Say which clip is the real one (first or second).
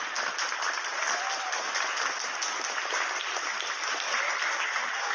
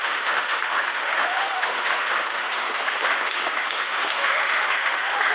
first